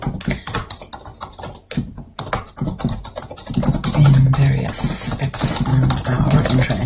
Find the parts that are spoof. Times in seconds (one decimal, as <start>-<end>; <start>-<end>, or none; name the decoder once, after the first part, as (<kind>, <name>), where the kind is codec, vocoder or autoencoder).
5.7-6.9 (vocoder, BigVGAN v2)

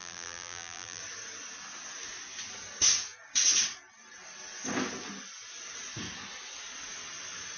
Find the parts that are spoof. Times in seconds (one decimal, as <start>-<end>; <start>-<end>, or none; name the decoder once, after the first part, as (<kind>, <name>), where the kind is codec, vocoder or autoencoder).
0.0-1.0 (vocoder, BigVGAN v2)

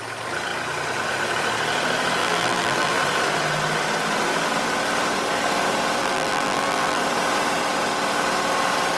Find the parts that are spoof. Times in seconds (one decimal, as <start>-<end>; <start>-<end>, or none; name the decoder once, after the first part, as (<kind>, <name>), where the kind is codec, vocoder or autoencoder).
2.2-3.0 (vocoder, BigVGAN v2); 6.0-7.0

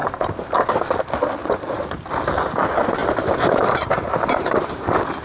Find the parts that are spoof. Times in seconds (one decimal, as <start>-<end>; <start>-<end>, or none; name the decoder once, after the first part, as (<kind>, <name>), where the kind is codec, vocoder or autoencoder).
0.0-0.8 (vocoder, BigVGAN v2); 1.4-2.0; 3.0-4.6

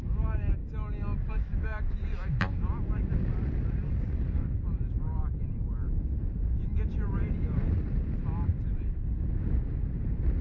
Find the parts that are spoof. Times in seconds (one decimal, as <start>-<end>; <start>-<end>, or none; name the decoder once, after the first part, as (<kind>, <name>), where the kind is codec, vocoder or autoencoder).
0.0-0.6 (vocoder, BigVGAN v2); 1.3-8.5; 10.0-10.4

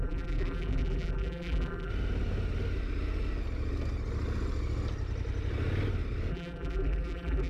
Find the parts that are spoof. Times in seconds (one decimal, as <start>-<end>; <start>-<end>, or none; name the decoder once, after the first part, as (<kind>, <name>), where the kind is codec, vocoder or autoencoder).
0.0-1.9 (vocoder, BigVGAN v2); 6.3-7.5

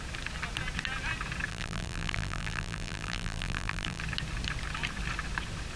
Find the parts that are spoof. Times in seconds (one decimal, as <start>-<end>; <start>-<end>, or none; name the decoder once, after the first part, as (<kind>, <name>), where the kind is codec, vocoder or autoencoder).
1.5-4.0 (vocoder, BigVGAN v2)